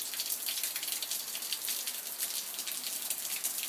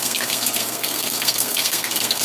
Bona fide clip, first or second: first